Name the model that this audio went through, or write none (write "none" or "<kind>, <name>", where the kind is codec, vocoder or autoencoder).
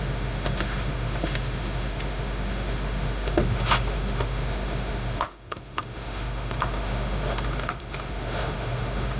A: autoencoder, DAC-VAE